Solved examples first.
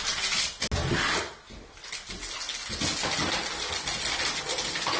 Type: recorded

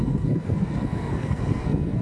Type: remade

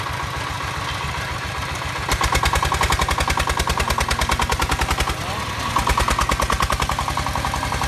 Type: recorded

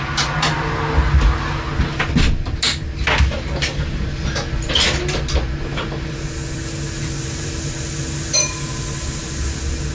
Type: recorded